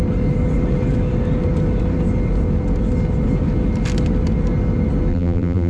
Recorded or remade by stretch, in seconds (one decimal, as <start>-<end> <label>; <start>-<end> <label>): 0.0-5.1 recorded; 5.1-5.7 remade